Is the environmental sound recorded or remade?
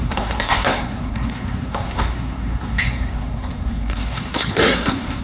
remade